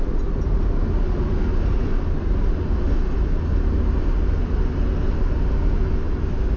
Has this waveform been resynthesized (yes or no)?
no